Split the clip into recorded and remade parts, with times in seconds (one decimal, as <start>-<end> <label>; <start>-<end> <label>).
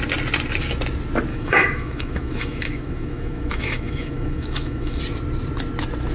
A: 0.0-1.3 recorded; 1.3-5.0 remade; 5.0-6.1 recorded